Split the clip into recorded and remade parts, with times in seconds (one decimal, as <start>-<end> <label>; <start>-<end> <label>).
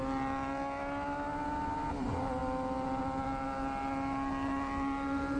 0.0-5.4 recorded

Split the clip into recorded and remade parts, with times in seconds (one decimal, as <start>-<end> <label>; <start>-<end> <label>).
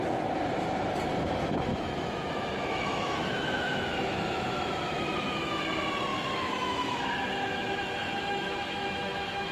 0.0-1.7 recorded; 1.7-5.6 remade; 5.6-6.1 recorded; 6.1-9.5 remade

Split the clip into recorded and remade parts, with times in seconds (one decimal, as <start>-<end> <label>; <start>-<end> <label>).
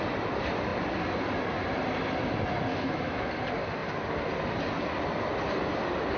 0.0-2.7 recorded; 2.7-3.3 remade; 3.3-6.2 recorded